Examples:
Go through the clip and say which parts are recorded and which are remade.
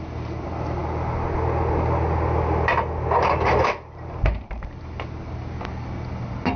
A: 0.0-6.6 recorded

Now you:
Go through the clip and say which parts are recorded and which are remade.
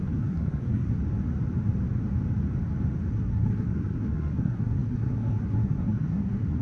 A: 0.0-1.0 remade; 1.0-3.1 recorded; 3.1-6.6 remade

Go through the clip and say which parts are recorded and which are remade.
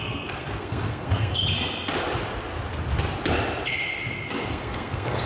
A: 0.0-1.3 remade; 1.3-4.5 recorded; 4.5-5.3 remade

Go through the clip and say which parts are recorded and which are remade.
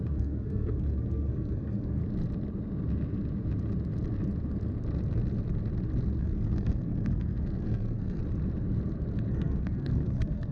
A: 0.0-2.0 remade; 2.0-6.2 recorded; 6.2-8.2 remade; 8.2-9.3 recorded; 9.3-10.5 remade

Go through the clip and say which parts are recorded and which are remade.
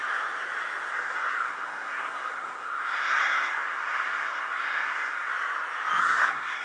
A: 0.0-0.9 recorded; 0.9-5.3 remade; 5.3-6.0 recorded; 6.0-6.6 remade